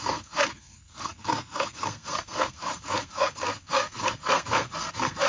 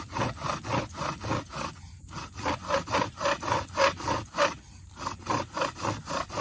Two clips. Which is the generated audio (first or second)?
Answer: first